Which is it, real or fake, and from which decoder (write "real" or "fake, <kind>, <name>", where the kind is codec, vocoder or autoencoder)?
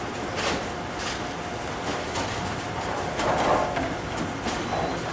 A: real